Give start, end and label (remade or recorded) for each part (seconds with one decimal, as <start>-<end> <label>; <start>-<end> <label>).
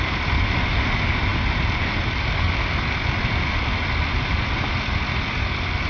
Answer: 0.0-5.9 recorded